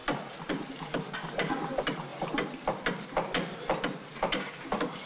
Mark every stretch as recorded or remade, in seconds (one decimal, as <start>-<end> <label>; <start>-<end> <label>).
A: 0.0-5.1 recorded